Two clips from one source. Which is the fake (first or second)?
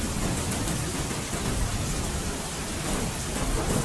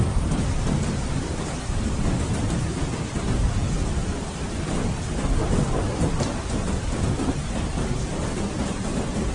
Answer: second